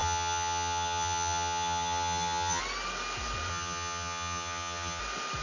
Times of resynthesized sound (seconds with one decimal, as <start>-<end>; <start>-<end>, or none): 0.0-2.6; 3.5-5.0